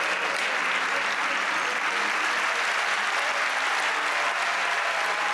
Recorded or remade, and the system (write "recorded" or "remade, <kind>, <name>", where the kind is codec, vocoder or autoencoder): recorded